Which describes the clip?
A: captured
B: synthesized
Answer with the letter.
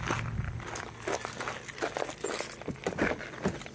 A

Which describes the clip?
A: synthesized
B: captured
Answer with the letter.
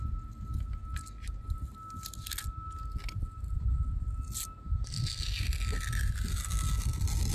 B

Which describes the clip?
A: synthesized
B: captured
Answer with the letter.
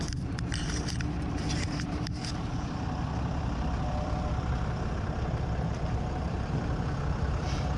A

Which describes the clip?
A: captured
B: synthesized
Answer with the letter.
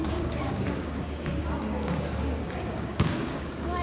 B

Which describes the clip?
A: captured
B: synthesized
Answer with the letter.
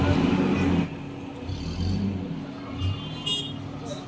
A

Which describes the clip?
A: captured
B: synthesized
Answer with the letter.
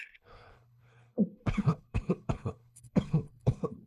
B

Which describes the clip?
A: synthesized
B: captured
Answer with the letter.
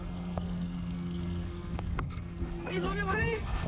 A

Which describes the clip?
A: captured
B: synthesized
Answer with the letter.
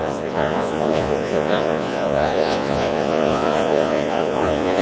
B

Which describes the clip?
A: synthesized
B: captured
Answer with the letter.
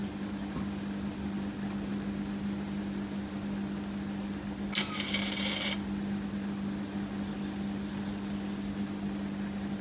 B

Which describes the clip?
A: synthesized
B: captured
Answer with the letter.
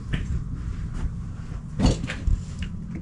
B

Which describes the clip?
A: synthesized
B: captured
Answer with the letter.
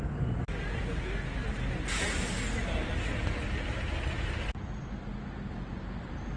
B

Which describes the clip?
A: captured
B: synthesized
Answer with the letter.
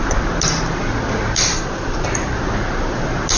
A